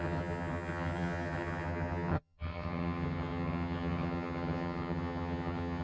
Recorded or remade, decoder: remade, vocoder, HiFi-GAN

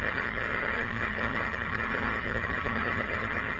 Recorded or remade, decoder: remade, vocoder, HiFi-GAN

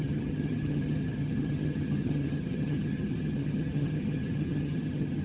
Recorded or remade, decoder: remade, vocoder, HiFi-GAN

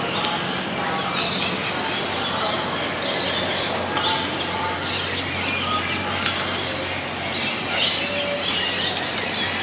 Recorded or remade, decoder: recorded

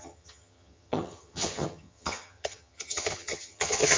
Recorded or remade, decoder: remade, vocoder, HiFi-GAN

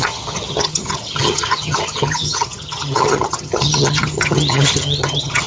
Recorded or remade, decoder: remade, vocoder, HiFi-GAN